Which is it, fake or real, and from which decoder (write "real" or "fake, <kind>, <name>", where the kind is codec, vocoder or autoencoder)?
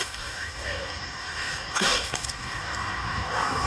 fake, codec, DAC